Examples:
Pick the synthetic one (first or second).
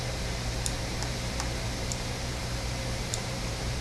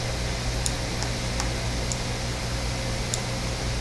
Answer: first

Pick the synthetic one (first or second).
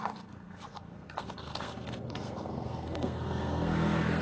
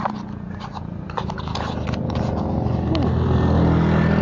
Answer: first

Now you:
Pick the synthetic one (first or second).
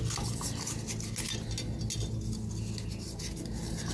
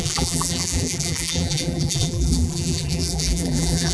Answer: second